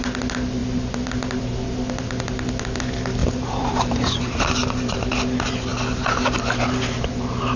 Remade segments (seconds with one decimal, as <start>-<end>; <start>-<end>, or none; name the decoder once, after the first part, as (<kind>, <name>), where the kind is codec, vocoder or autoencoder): 3.2-5.0 (vocoder, BigVGAN v2)